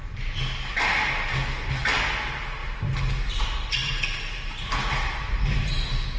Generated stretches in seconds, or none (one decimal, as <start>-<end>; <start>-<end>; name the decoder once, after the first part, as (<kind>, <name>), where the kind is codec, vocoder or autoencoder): 1.3-1.8 (codec, SNAC)